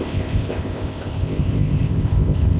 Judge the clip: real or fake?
fake